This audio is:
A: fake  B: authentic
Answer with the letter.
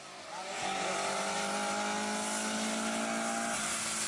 B